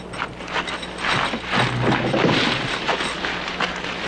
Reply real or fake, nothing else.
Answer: real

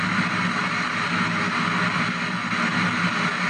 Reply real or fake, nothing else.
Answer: real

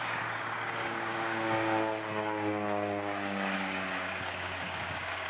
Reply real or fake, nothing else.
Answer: fake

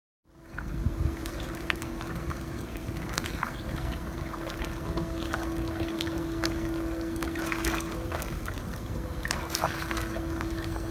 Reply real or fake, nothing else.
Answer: fake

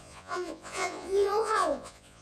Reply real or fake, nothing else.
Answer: fake